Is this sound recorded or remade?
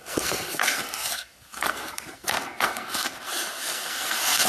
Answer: remade